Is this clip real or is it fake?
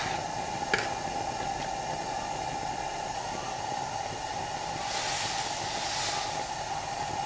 real